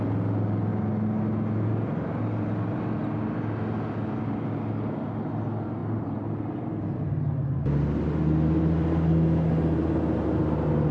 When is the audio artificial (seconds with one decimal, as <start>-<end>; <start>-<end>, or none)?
none